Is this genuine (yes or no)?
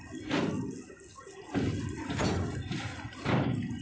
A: yes